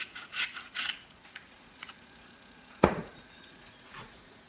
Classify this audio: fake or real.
fake